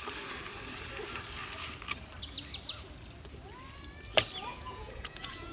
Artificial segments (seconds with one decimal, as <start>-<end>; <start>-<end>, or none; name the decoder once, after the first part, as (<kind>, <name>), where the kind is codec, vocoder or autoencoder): 4.5-5.5 (vocoder, Vocos)